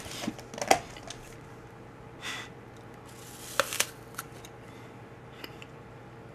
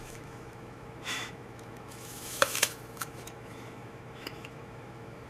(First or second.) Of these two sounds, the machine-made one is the second